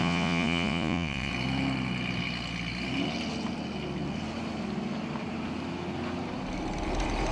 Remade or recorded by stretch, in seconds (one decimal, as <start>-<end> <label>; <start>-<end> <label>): 0.0-1.3 remade; 1.3-7.3 recorded